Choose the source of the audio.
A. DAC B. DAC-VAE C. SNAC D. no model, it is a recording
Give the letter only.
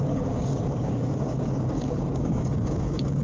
A